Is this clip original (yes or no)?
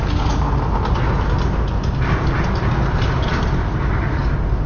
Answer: yes